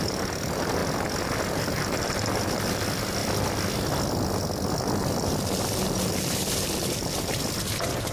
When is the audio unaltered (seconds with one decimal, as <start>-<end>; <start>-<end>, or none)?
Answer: 0.0-5.0; 7.1-8.1